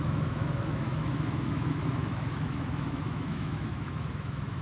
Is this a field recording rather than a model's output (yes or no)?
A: no